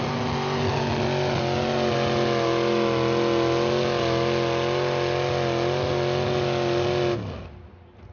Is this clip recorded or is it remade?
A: recorded